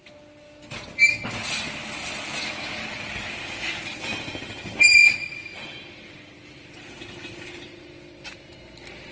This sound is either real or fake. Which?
real